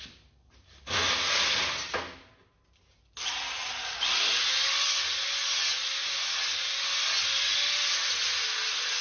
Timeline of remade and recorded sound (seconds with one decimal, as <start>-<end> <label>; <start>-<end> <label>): 0.0-9.0 recorded